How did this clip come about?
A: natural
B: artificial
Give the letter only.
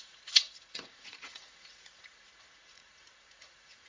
B